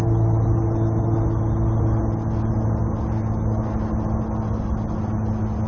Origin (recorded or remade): recorded